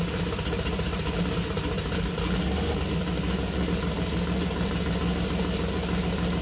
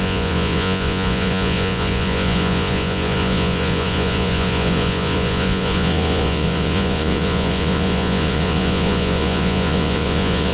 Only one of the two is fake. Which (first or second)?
second